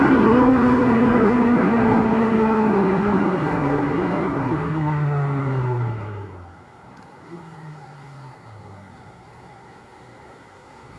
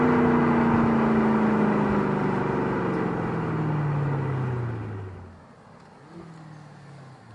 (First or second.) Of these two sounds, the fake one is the first